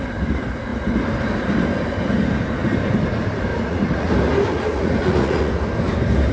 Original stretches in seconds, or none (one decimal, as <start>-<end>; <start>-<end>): 0.0-3.5; 4.1-4.5; 5.5-6.3